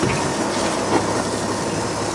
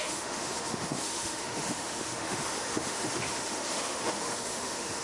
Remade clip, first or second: second